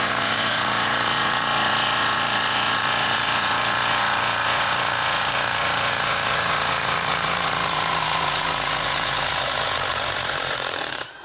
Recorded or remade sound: remade